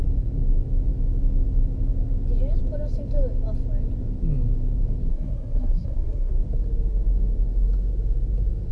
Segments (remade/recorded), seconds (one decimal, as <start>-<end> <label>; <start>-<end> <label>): 0.0-5.1 recorded; 5.1-6.3 remade; 6.3-8.7 recorded